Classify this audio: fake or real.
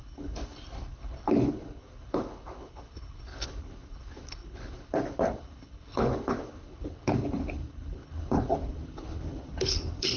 fake